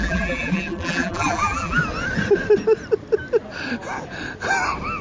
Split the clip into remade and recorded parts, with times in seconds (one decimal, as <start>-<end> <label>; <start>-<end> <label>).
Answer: 0.0-1.8 remade; 1.8-5.0 recorded